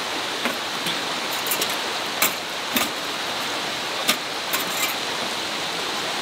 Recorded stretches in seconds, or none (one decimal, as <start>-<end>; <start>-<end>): 0.0-6.2